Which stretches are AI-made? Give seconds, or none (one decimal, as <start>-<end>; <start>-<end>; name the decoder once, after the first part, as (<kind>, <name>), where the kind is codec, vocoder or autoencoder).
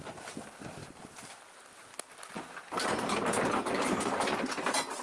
none